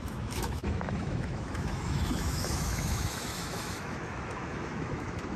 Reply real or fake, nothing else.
fake